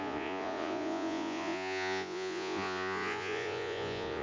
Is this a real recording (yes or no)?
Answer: no